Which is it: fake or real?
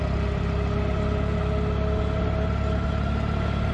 real